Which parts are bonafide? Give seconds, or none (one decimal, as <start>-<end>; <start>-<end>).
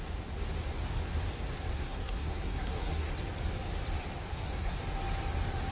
0.0-1.7; 3.1-4.3; 4.8-5.7